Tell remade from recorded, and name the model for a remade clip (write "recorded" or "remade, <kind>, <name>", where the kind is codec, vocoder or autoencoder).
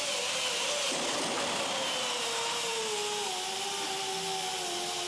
recorded